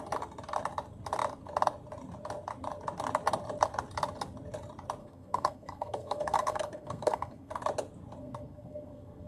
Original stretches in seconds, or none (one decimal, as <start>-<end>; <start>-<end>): 0.0-5.0; 7.5-8.2